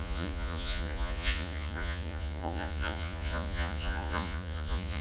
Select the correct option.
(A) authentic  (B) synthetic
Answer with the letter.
B